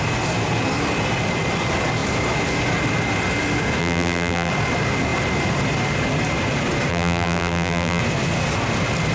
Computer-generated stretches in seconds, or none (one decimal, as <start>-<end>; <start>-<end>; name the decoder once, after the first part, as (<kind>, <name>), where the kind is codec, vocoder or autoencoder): 3.8-4.5 (vocoder, BigVGAN v2); 6.9-8.0